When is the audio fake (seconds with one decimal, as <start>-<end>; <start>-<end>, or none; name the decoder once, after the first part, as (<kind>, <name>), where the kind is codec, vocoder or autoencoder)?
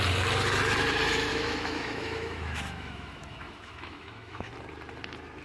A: 1.3-4.5 (autoencoder, DAC-VAE)